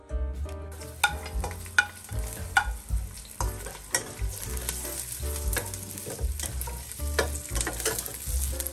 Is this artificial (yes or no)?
no